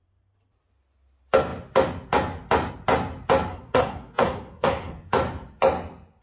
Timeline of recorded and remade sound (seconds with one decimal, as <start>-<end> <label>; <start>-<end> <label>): 0.0-3.5 recorded; 3.5-4.9 remade; 4.9-6.2 recorded